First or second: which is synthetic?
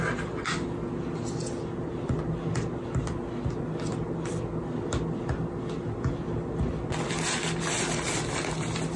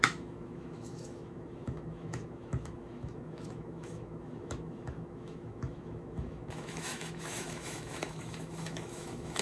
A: second